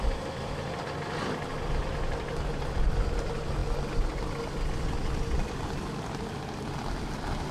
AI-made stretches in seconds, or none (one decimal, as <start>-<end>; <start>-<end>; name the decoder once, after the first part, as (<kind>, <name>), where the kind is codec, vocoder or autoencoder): none